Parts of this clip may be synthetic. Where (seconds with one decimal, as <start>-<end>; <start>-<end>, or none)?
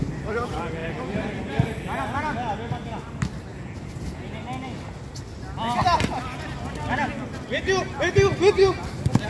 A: none